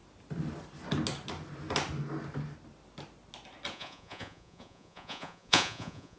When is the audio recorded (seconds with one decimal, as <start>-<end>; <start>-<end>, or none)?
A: 0.0-3.7